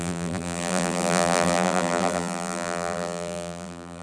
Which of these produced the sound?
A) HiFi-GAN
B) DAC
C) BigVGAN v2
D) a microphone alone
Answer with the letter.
C